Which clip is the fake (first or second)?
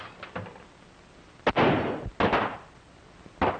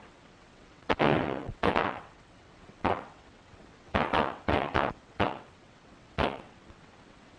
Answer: second